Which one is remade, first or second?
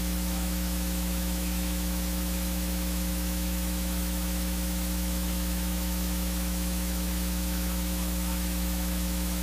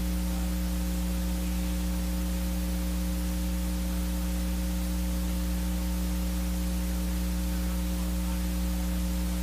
first